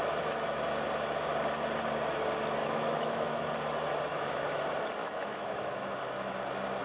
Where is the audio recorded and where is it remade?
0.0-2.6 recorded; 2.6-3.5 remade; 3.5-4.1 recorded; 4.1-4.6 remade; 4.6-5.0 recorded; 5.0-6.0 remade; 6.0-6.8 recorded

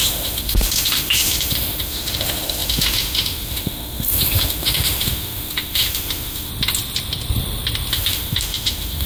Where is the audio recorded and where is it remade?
0.0-6.5 remade; 6.5-7.9 recorded; 7.9-9.1 remade

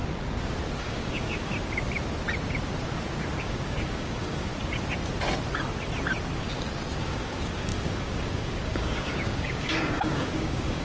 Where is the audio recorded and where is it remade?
0.0-0.8 recorded; 0.8-1.5 remade; 1.5-3.4 recorded; 3.4-4.5 remade; 4.5-7.0 recorded; 7.0-10.8 remade

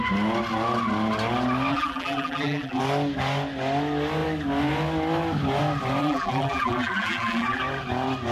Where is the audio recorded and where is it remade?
0.0-1.7 recorded; 1.7-2.8 remade; 2.8-6.0 recorded; 6.0-7.6 remade; 7.6-8.3 recorded

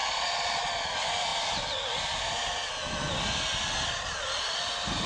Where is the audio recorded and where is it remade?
0.0-0.6 remade; 0.6-5.1 recorded

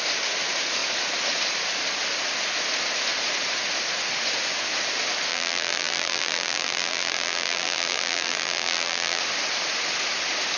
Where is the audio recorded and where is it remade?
0.0-5.3 recorded; 5.3-9.2 remade; 9.2-10.6 recorded